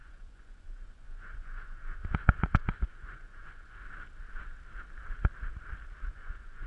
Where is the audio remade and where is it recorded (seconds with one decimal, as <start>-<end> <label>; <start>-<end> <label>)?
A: 0.0-3.8 remade; 3.8-6.1 recorded; 6.1-6.7 remade